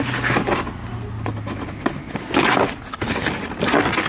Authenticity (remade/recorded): recorded